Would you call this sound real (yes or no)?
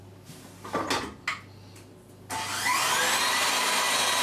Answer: yes